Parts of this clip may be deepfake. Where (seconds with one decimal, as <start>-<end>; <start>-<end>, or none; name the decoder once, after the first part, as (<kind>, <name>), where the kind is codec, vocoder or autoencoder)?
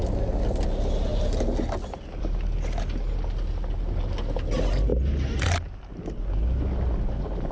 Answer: none